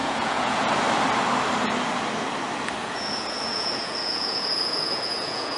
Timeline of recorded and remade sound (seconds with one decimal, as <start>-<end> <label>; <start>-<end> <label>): 0.0-0.7 remade; 0.7-2.8 recorded; 2.8-5.6 remade